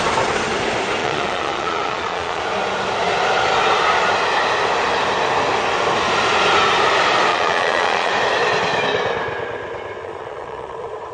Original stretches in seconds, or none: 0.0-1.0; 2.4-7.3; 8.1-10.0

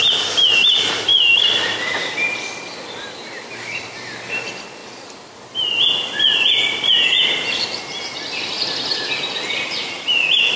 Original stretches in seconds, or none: 0.0-10.6